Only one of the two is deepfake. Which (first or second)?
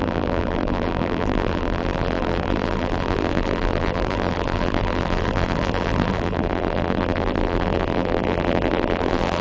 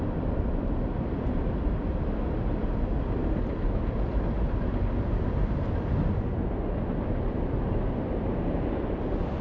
first